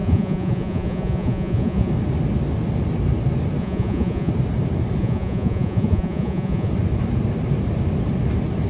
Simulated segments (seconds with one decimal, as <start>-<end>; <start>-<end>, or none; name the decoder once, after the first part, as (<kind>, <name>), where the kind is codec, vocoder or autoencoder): 0.0-1.9 (vocoder, Vocos); 3.6-4.3; 5.0-6.7